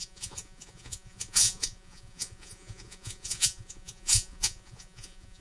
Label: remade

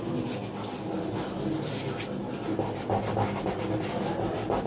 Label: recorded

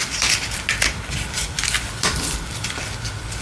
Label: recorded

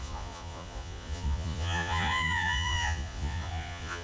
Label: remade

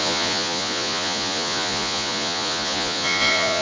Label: remade